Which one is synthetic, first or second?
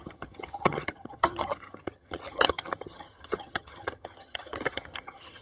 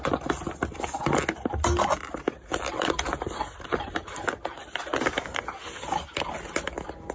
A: first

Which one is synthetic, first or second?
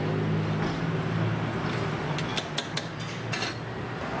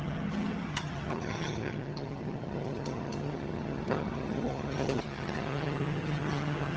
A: second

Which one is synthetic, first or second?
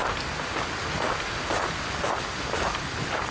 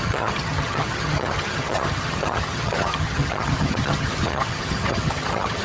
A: second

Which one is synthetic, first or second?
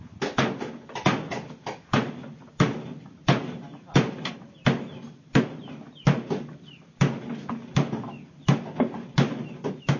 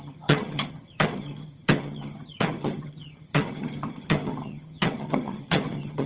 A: second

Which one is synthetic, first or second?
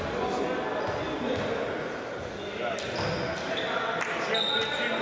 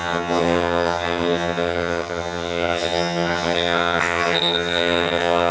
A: second